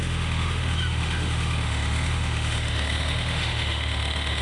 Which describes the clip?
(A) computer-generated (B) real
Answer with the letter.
A